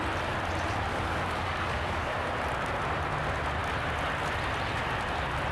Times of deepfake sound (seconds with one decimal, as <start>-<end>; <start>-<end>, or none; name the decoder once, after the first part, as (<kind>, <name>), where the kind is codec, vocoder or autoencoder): 0.9-2.1 (codec, DAC)

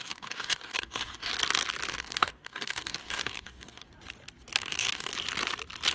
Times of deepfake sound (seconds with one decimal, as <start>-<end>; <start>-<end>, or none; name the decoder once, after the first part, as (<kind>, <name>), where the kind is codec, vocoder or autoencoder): 0.0-1.3 (codec, DAC); 1.9-3.9; 4.6-5.1

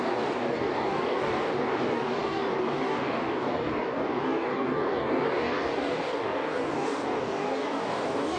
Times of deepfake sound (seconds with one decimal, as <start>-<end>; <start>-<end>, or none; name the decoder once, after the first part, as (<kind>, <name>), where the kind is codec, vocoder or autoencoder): 0.0-8.4 (codec, DAC)

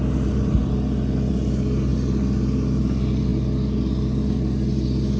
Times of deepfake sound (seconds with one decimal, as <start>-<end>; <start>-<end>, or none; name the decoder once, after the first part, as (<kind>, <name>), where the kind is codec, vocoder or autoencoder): none